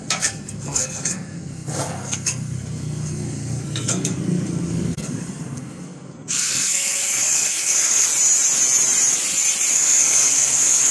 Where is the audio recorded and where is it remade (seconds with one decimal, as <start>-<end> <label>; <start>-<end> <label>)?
0.0-8.1 remade; 8.1-9.7 recorded; 9.7-10.9 remade